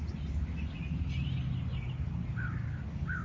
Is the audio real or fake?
real